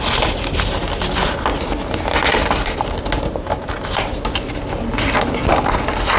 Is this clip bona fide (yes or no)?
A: yes